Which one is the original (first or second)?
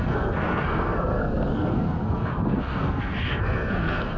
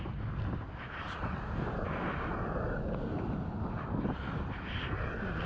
second